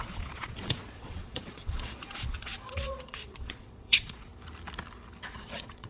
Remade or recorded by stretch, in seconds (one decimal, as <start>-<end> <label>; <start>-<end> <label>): 0.0-4.3 remade; 4.3-5.3 recorded; 5.3-5.9 remade